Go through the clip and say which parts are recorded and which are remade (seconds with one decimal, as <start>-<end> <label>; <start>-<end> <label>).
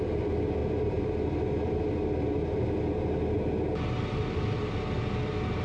0.0-5.6 recorded